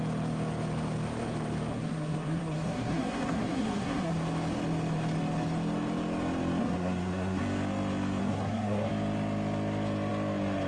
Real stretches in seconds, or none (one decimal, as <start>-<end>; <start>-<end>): 0.0-1.7; 4.1-6.6; 7.4-8.2; 8.9-10.7